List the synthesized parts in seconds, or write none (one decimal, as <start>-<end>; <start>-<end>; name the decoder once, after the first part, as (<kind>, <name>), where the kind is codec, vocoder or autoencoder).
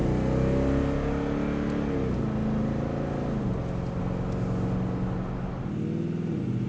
none